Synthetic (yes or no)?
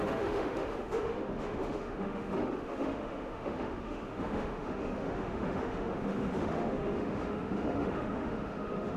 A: yes